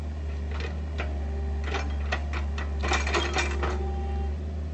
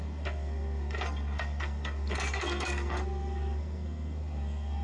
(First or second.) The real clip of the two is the first